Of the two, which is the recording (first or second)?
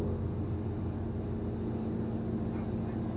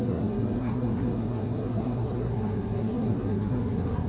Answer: first